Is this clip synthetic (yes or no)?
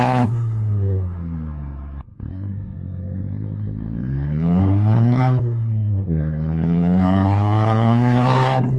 yes